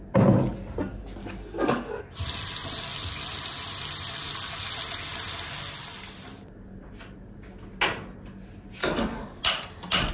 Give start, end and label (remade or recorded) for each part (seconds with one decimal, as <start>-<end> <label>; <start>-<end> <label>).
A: 0.0-1.2 recorded; 1.2-2.0 remade; 2.0-8.8 recorded; 8.8-9.4 remade; 9.4-10.1 recorded

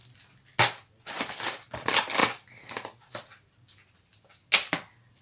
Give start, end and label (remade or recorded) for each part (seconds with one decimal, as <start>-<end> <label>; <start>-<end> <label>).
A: 0.0-5.2 recorded

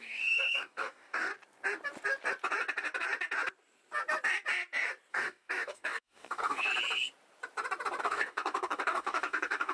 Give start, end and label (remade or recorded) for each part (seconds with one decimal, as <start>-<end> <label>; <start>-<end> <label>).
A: 0.0-1.3 remade; 1.3-5.1 recorded; 5.1-6.7 remade; 6.7-8.0 recorded; 8.0-9.7 remade

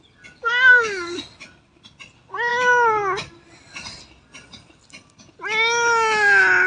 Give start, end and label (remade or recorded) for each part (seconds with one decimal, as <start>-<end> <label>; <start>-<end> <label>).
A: 0.0-0.4 recorded; 0.4-1.2 remade; 1.2-6.7 recorded